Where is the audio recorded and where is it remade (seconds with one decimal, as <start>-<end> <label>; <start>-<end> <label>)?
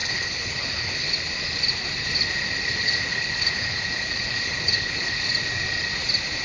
0.0-1.1 remade; 1.1-2.8 recorded; 2.8-5.2 remade; 5.2-6.4 recorded